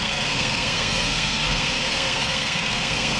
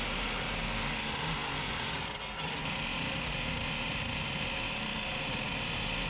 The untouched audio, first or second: second